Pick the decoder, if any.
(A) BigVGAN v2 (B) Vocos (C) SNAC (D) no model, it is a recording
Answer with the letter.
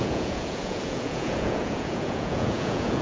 B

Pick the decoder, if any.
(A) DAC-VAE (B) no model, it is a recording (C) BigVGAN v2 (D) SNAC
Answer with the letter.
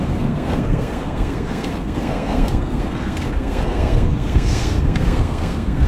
D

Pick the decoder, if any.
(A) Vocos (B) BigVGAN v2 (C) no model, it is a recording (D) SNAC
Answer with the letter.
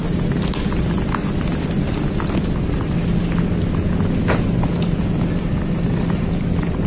C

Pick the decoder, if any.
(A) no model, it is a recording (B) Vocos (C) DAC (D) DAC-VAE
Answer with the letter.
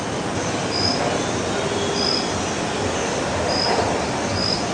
A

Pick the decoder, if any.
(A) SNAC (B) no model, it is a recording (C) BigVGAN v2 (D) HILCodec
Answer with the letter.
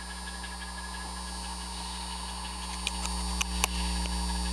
B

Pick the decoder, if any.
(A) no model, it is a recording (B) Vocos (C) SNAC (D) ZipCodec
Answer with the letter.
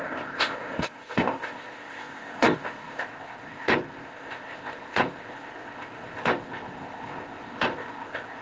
D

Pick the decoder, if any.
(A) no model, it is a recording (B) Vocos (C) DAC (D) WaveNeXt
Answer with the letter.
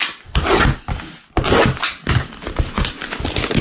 A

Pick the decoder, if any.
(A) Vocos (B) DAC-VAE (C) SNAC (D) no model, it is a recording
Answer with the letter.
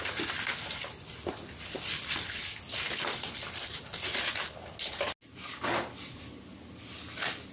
D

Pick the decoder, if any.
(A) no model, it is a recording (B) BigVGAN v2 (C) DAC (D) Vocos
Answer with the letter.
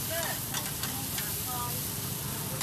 A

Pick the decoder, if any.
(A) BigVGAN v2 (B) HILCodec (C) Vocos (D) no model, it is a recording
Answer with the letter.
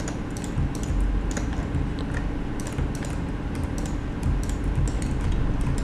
D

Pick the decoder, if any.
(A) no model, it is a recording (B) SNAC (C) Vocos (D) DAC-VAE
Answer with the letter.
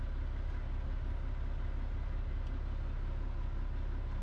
A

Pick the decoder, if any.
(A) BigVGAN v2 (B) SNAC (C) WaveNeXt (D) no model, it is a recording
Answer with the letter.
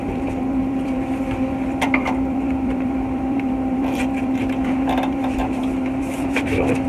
A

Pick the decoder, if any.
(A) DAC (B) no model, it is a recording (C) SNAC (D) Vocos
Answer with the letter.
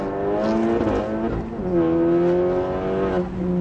B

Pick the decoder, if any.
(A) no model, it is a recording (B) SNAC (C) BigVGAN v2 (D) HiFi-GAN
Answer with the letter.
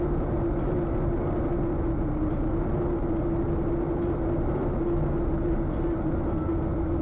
A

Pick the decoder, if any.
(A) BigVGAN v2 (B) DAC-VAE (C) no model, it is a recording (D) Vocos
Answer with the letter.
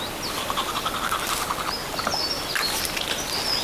C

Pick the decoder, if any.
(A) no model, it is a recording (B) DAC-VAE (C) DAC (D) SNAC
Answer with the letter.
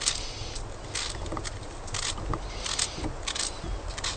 A